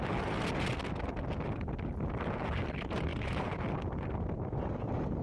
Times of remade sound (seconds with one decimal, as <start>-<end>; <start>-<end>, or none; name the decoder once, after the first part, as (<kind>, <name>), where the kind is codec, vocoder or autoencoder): none